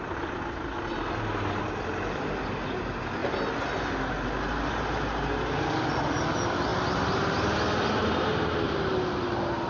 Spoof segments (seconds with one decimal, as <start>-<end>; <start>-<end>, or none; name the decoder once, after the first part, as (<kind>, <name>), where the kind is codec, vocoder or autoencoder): none